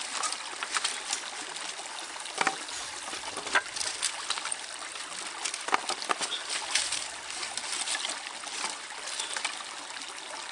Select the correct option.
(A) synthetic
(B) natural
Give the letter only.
B